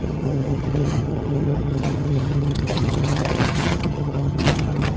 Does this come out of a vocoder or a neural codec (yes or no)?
yes